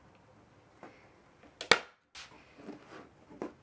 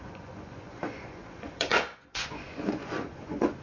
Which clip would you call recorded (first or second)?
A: first